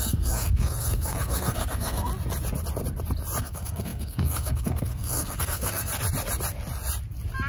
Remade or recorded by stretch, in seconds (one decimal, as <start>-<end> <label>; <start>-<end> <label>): 0.0-2.1 remade; 2.1-3.4 recorded; 3.4-5.9 remade; 5.9-7.5 recorded